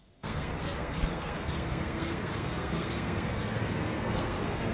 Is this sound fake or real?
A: fake